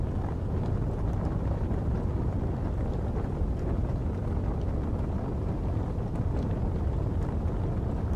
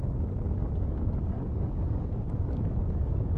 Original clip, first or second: first